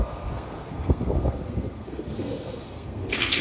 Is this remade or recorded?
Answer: remade